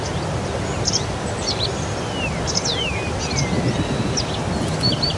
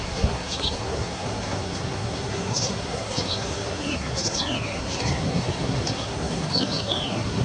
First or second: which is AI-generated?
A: second